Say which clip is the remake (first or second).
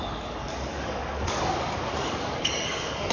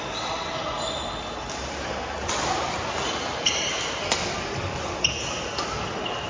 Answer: first